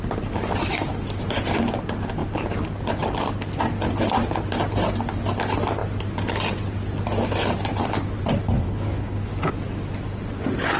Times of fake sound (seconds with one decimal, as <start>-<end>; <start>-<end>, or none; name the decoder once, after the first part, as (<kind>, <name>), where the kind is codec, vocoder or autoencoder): 8.6-9.3 (codec, HILCodec)